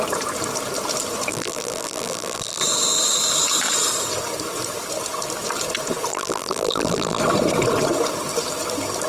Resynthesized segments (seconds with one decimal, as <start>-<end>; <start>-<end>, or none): 1.3-2.6; 6.1-7.2